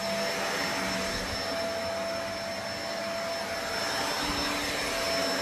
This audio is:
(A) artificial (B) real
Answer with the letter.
B